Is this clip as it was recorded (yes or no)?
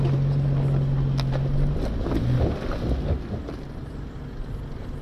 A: yes